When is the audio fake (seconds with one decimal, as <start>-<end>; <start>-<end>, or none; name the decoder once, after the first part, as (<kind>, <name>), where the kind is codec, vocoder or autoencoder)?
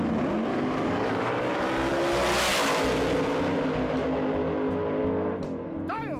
0.5-1.3 (codec, DAC)